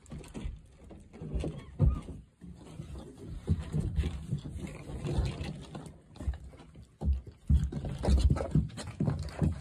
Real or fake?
real